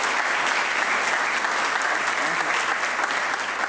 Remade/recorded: recorded